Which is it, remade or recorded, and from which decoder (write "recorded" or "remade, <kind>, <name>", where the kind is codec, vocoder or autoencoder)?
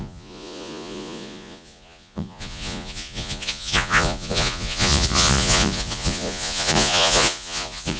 remade, vocoder, Vocos